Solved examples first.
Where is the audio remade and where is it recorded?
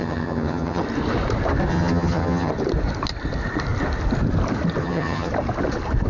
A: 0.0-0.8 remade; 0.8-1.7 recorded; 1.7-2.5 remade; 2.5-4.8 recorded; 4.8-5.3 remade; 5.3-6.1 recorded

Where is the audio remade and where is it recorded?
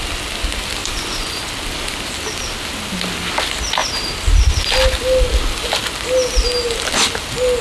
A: 0.0-0.8 recorded; 0.8-1.5 remade; 1.5-7.6 recorded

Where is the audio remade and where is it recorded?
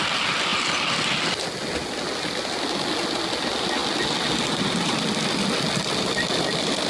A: 0.0-6.9 recorded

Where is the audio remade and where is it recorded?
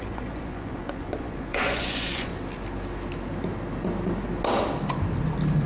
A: 0.0-2.3 remade; 2.3-5.7 recorded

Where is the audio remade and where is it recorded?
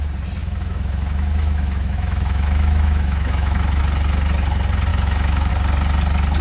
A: 0.0-0.4 recorded; 0.4-3.8 remade; 3.8-4.9 recorded; 4.9-5.5 remade; 5.5-6.4 recorded